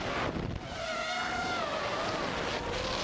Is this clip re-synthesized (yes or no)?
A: no